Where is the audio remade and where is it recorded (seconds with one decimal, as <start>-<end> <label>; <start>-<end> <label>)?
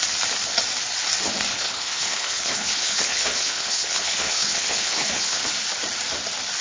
0.0-1.5 recorded; 1.5-5.5 remade; 5.5-6.6 recorded